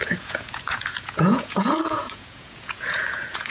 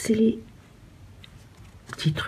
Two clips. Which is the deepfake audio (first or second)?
first